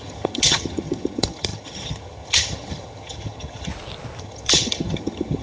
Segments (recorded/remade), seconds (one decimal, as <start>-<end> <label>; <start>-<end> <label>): 0.0-3.7 remade; 3.7-4.2 recorded; 4.2-5.4 remade

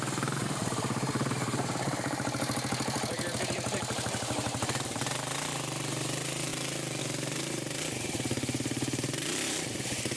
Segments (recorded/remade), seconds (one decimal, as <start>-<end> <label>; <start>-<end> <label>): 0.0-6.5 remade; 6.5-7.0 recorded; 7.0-10.2 remade

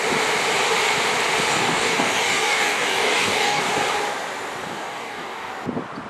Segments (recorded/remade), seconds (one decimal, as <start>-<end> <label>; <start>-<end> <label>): 0.0-1.5 recorded; 1.5-3.6 remade; 3.6-4.6 recorded; 4.6-5.5 remade; 5.5-6.1 recorded

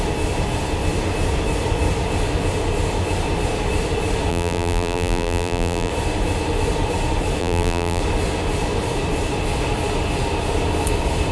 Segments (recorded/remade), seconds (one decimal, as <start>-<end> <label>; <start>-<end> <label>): 0.0-4.3 recorded; 4.3-5.9 remade; 5.9-7.4 recorded; 7.4-8.0 remade; 8.0-11.3 recorded

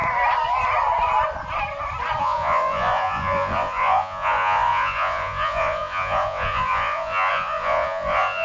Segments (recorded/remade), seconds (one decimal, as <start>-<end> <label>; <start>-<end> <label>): 0.0-2.2 recorded; 2.2-8.4 remade

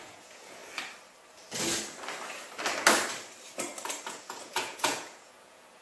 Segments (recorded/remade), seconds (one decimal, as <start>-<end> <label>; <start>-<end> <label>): 0.0-0.6 remade; 0.6-4.1 recorded; 4.1-5.8 remade

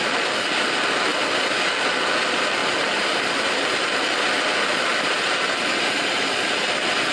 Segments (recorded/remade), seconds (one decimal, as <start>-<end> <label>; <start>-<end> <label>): 0.0-7.1 remade